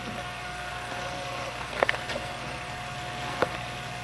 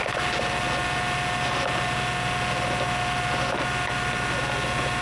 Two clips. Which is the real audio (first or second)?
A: second